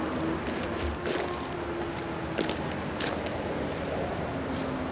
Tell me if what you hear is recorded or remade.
recorded